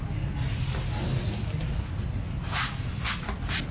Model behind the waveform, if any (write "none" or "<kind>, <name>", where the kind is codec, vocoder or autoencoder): none